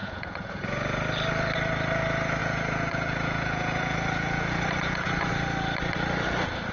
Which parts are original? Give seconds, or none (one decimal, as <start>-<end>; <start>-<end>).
1.0-2.4; 5.3-6.7